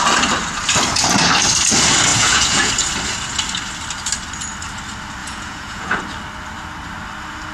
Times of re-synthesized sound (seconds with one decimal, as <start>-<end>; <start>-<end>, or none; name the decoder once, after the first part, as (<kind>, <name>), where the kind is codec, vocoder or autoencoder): 2.1-2.7 (vocoder, Vocos); 5.2-6.0